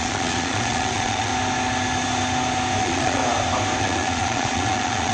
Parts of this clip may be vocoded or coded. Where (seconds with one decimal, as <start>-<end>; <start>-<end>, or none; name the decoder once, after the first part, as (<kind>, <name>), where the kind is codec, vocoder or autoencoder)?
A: 0.0-1.3 (vocoder, Vocos); 2.8-3.2; 3.8-5.1